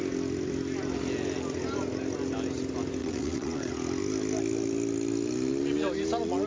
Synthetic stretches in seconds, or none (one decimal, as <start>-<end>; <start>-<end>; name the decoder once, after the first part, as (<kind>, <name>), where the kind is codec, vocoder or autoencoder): 3.0-3.7 (vocoder, WaveNeXt)